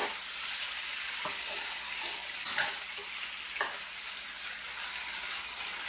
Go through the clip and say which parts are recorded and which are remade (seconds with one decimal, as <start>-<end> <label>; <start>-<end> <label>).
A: 0.0-5.9 recorded